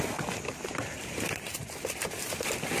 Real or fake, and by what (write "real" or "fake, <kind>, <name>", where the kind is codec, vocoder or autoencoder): real